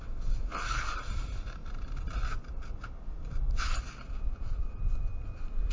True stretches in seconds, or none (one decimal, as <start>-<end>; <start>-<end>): 0.0-5.7